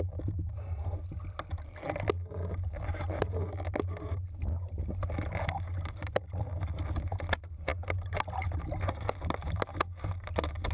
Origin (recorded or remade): recorded